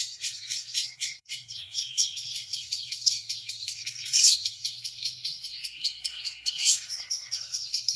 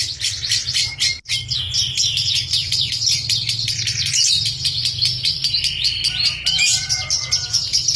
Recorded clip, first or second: second